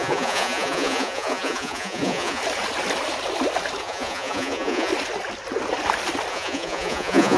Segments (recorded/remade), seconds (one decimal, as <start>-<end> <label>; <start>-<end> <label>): 0.0-2.4 remade; 2.4-3.8 recorded; 3.8-4.9 remade; 4.9-6.3 recorded; 6.3-7.4 remade